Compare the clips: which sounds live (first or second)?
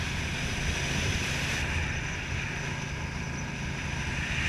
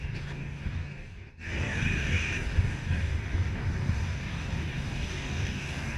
first